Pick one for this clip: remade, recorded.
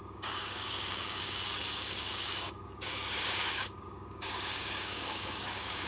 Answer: remade